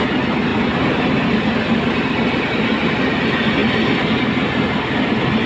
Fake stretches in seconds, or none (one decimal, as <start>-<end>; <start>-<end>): none